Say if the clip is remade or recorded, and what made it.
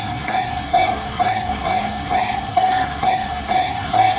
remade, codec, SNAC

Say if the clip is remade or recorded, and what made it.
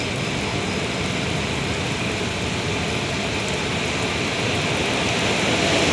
recorded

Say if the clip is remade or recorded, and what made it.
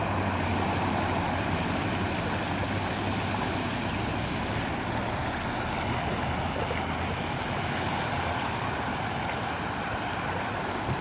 recorded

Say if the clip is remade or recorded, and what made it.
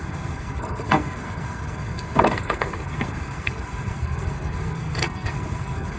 remade, codec, SNAC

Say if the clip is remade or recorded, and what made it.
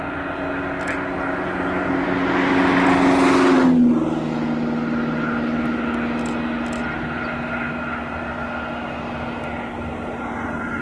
recorded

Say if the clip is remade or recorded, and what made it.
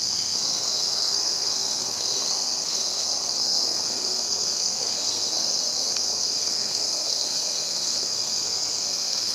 remade, codec, SNAC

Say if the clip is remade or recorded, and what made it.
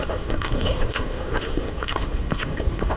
remade, codec, SNAC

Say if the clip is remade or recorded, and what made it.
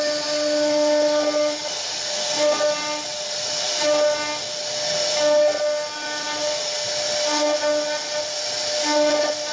recorded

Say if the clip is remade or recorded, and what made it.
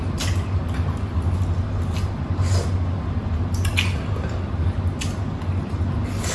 recorded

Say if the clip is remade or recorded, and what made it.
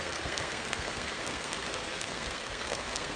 remade, codec, SNAC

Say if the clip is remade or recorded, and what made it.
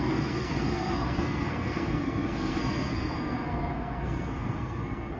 remade, codec, SNAC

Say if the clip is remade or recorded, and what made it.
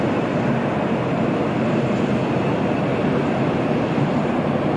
recorded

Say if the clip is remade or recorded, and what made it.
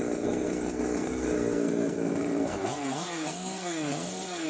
remade, codec, SNAC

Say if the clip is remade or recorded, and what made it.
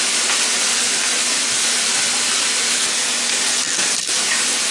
recorded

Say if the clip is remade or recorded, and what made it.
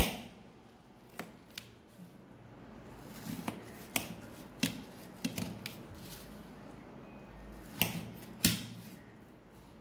recorded